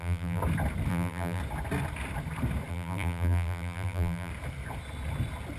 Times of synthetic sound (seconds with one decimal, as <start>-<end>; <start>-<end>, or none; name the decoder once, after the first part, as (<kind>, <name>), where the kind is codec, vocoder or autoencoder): 0.0-0.4 (vocoder, BigVGAN v2); 0.9-1.4; 2.7-4.3